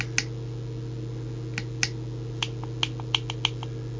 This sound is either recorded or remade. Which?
recorded